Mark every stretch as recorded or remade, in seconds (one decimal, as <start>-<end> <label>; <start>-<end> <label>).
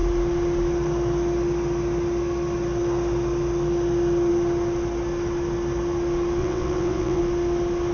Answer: 0.0-6.4 recorded; 6.4-7.2 remade; 7.2-7.9 recorded